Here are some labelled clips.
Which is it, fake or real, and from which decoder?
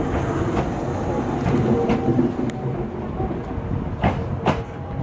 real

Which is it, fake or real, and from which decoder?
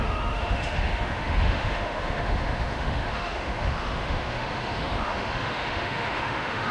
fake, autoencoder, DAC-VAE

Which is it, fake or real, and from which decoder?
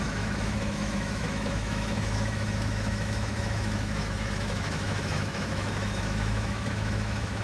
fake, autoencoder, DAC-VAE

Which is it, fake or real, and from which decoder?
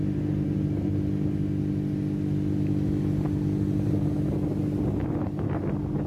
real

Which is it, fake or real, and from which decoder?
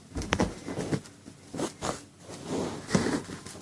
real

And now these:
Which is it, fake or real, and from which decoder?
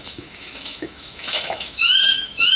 fake, autoencoder, DAC-VAE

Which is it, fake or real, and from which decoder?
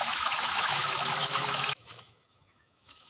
fake, autoencoder, DAC-VAE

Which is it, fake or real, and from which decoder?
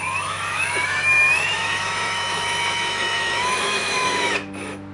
fake, autoencoder, DAC-VAE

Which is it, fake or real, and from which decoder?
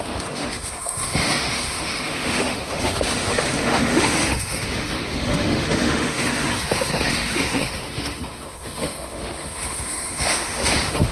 fake, autoencoder, DAC-VAE